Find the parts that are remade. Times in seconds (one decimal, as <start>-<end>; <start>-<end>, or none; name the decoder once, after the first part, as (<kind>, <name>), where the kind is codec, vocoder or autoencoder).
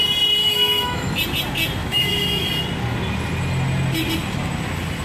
0.4-1.1 (autoencoder, DAC-VAE); 1.8-2.5